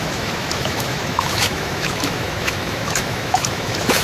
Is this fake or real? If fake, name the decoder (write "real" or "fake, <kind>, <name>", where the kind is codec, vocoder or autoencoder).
fake, autoencoder, DAC-VAE